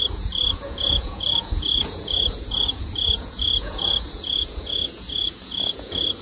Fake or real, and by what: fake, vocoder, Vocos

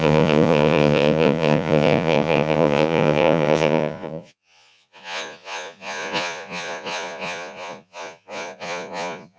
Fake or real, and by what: fake, vocoder, Vocos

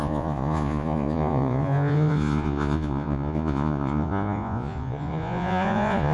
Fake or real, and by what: fake, vocoder, Vocos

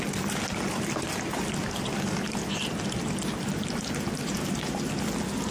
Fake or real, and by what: real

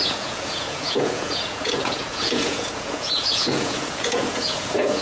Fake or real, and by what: fake, vocoder, Vocos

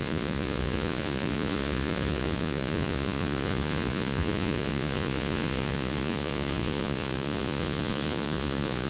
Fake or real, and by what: fake, vocoder, Vocos